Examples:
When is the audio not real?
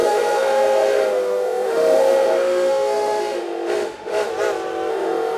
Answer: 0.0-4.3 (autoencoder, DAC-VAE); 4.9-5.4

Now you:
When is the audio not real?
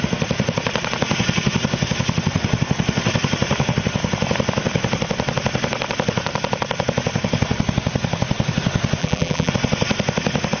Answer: 9.0-9.5 (vocoder, BigVGAN v2)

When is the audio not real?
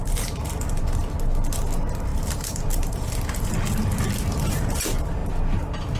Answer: 0.0-0.8 (vocoder, BigVGAN v2); 2.1-3.5; 4.3-4.8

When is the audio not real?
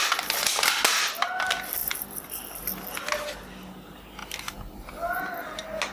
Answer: none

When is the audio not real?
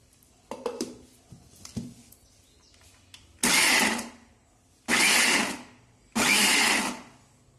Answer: none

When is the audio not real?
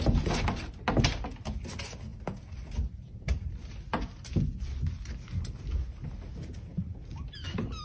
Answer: 2.1-5.7 (vocoder, BigVGAN v2); 6.7-7.8